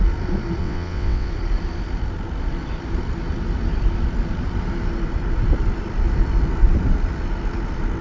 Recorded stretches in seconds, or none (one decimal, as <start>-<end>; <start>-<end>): 0.0-0.6; 1.3-8.0